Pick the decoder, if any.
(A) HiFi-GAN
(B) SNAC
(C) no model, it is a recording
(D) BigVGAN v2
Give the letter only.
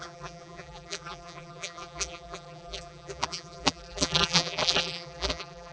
D